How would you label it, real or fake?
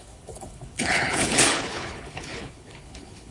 fake